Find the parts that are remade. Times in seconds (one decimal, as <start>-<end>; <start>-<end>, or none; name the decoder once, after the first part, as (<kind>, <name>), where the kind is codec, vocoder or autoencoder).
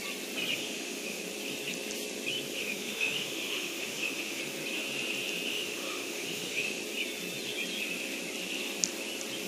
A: 0.5-1.2 (autoencoder, DAC-VAE); 2.5-4.4; 5.5-6.8